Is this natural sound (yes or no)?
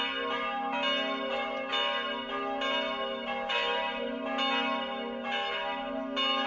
yes